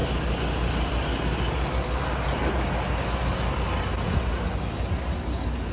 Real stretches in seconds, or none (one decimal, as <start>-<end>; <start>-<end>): 0.0-5.7

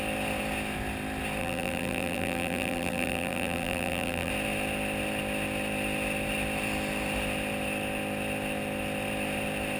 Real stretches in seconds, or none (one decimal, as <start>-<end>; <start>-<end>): 0.0-1.4; 4.3-9.8

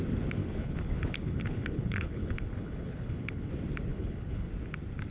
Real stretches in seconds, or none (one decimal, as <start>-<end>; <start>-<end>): 0.0-0.4; 3.5-3.9; 4.5-5.1

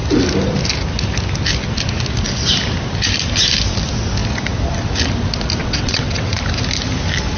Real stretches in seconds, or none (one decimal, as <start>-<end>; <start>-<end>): 0.0-5.6; 6.4-7.4